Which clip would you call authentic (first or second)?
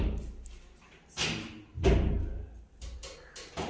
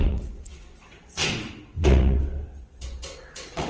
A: first